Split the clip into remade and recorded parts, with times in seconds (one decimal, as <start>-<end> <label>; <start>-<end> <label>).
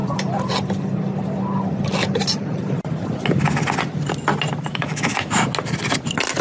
0.0-4.7 recorded; 4.7-5.3 remade; 5.3-6.4 recorded